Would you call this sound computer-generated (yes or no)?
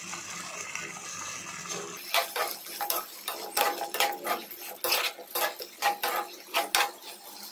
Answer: no